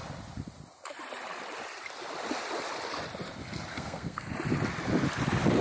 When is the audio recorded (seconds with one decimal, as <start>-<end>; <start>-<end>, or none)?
0.0-3.7; 4.3-5.6